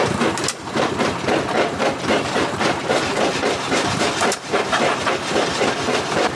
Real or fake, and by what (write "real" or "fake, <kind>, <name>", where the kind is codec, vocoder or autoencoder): real